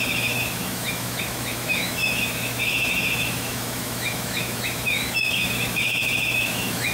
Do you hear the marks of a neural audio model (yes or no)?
yes